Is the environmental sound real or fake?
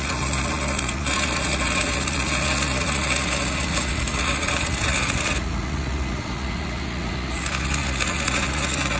fake